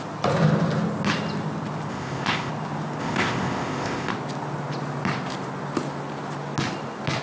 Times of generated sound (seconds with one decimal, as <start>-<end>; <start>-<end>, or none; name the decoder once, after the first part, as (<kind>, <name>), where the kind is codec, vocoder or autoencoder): 1.9-2.5 (codec, ZipCodec); 3.0-4.1